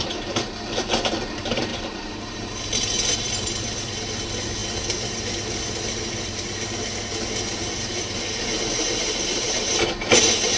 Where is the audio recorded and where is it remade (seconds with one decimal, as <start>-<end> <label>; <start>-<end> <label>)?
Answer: 0.0-1.7 recorded; 1.7-3.5 remade; 3.5-10.6 recorded